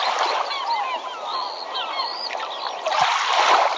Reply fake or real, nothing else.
real